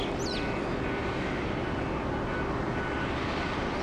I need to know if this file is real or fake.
real